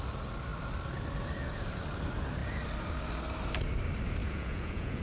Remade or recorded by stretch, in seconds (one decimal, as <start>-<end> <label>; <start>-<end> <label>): 0.0-4.2 recorded; 4.2-5.0 remade